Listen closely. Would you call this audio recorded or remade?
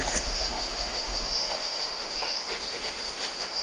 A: remade